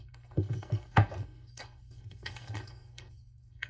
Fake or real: fake